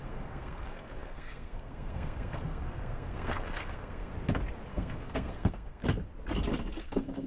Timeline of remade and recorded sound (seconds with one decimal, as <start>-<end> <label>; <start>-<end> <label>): 0.0-4.1 remade; 4.1-4.7 recorded; 4.7-5.8 remade; 5.8-6.8 recorded; 6.8-7.3 remade